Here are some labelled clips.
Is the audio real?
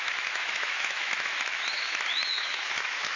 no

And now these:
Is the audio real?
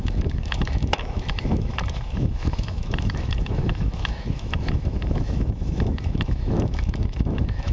no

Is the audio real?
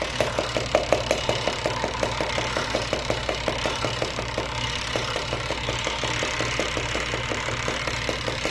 yes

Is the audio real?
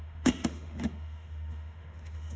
no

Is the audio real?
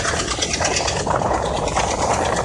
yes